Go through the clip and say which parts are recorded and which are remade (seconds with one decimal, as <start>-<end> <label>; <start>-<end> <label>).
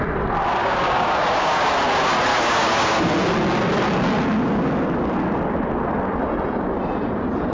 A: 0.0-0.6 recorded; 0.6-1.7 remade; 1.7-2.3 recorded; 2.3-3.1 remade; 3.1-7.5 recorded